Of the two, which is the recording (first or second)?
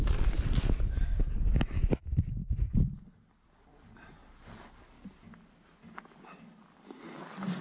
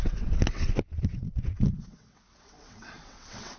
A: first